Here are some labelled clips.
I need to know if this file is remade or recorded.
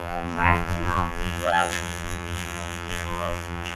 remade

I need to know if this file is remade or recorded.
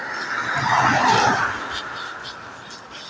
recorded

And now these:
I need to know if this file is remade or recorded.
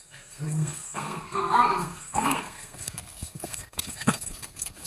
remade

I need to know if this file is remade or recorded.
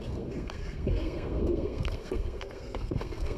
remade